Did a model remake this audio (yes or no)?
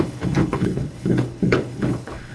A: yes